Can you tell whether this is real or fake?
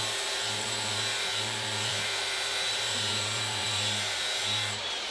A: fake